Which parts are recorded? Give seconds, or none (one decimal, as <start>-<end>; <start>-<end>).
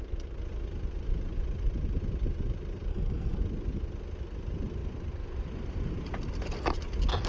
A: 0.0-2.9; 3.4-7.3